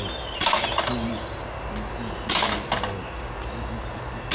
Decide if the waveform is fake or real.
real